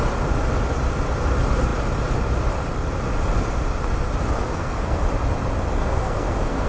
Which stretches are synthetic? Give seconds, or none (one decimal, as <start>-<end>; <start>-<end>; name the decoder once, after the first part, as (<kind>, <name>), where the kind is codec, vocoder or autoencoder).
4.5-5.0 (codec, SNAC); 5.8-6.7